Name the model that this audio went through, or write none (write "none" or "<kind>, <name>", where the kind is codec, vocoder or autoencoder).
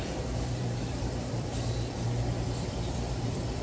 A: vocoder, BigVGAN v2